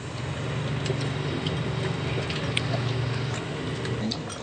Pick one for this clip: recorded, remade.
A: recorded